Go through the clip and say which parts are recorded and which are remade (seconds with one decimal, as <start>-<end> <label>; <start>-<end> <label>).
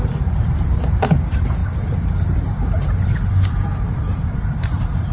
0.0-5.1 remade